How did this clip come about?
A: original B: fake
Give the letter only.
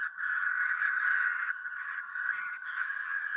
B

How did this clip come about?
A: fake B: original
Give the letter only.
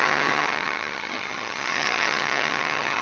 A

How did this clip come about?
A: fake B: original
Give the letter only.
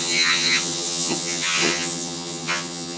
A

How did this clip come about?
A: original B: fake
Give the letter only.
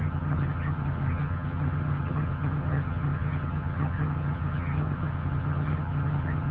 B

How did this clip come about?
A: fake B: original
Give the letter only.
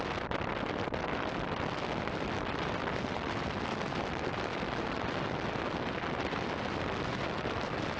B